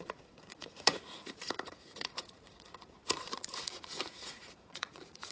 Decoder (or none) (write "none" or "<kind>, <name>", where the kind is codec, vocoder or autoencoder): vocoder, Vocos